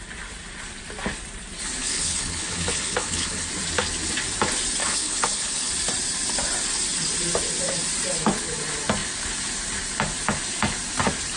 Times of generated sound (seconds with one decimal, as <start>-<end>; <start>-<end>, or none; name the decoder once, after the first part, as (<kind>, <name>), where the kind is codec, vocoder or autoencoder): 1.8-3.5 (codec, HILCodec); 4.8-5.7